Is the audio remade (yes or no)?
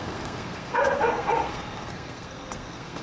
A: yes